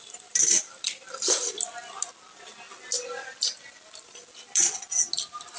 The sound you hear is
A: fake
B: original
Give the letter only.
B